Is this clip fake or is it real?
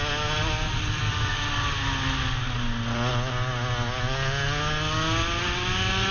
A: real